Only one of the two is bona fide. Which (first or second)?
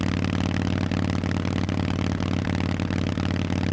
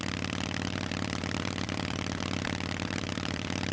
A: first